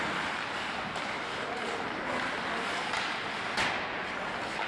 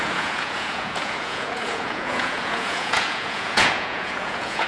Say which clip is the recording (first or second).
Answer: first